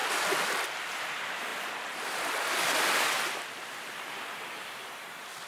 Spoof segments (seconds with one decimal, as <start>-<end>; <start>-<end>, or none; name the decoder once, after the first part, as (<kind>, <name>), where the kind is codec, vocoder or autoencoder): 1.5-4.8 (vocoder, BigVGAN v2)